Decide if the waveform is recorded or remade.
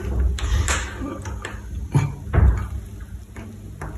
recorded